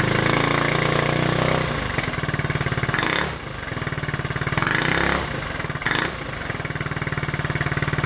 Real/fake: real